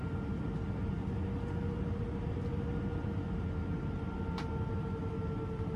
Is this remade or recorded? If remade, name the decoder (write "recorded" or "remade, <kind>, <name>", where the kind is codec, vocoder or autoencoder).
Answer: recorded